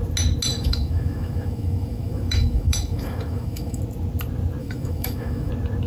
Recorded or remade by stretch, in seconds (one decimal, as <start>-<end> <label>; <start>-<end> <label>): 0.0-0.5 recorded; 0.5-3.8 remade; 3.8-4.6 recorded; 4.6-5.5 remade; 5.5-5.9 recorded